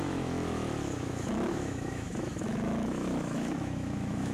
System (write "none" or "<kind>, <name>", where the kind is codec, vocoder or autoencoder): autoencoder, DAC-VAE